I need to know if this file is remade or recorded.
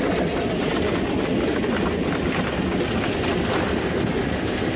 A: recorded